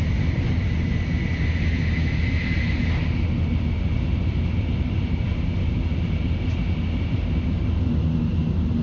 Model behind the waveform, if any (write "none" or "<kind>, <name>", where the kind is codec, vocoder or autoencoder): none